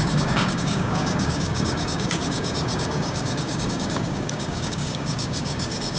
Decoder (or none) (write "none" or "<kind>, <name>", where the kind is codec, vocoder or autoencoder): codec, DAC